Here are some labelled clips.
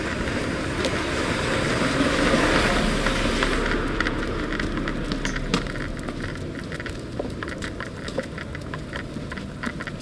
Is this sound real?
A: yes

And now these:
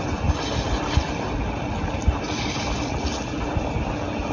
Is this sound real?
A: yes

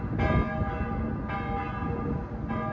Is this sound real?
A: yes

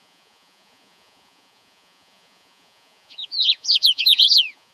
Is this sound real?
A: no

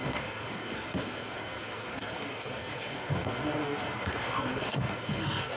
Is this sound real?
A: no